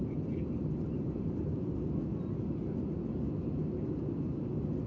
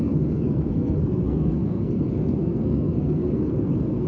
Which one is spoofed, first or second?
second